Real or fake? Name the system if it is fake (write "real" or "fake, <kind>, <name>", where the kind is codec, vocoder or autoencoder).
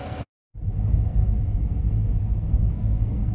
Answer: fake, codec, SNAC